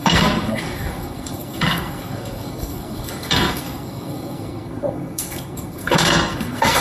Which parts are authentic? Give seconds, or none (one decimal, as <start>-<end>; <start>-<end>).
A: none